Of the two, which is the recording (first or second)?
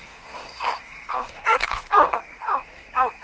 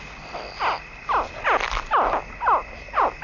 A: second